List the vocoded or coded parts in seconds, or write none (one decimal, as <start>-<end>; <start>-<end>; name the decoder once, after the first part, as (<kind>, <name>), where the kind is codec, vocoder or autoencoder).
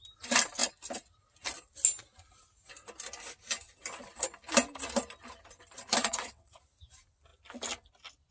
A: 6.0-6.6 (vocoder, WaveNeXt)